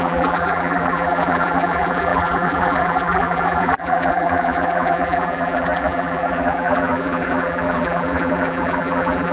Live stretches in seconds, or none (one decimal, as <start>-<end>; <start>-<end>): none